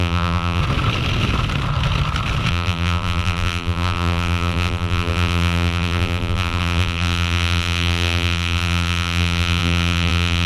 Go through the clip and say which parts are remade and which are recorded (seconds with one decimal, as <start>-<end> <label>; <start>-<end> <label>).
0.0-0.6 remade; 0.6-2.5 recorded; 2.5-10.5 remade